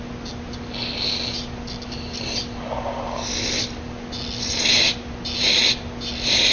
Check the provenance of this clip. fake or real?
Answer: real